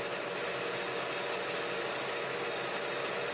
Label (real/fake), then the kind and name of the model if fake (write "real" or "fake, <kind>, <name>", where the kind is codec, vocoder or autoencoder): real